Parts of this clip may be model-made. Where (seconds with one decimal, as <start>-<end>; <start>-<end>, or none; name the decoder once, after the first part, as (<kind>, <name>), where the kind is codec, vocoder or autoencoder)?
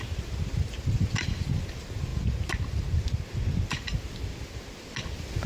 none